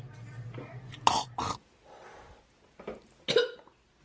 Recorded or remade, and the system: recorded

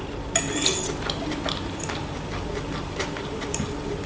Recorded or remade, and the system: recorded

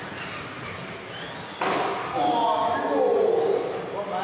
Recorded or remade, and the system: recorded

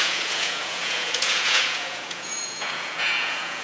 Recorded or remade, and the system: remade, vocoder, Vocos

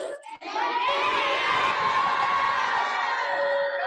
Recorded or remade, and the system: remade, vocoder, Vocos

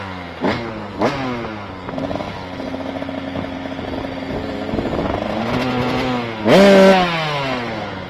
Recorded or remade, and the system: recorded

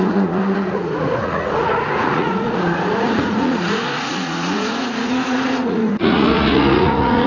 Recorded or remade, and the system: remade, vocoder, Vocos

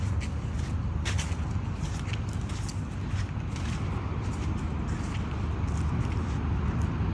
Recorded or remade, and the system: recorded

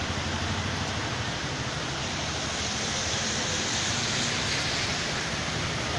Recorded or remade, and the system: recorded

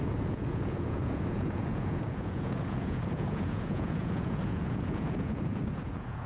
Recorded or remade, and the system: remade, vocoder, Vocos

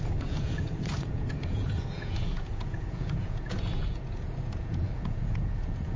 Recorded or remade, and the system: remade, vocoder, Vocos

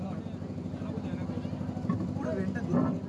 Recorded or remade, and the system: recorded